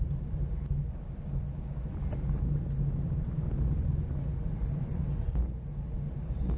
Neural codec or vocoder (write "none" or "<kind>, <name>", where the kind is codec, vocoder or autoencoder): none